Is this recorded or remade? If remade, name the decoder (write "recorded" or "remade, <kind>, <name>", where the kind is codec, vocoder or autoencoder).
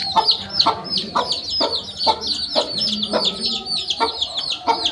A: recorded